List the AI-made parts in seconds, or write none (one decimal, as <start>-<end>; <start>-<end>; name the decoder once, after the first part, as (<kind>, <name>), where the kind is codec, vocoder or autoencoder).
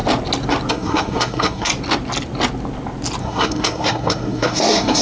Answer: 0.7-1.7 (codec, SNAC); 3.2-5.0